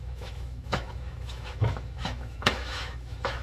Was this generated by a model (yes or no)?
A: yes